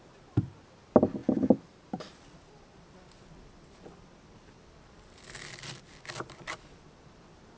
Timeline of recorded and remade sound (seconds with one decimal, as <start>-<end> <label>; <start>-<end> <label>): 0.0-7.6 recorded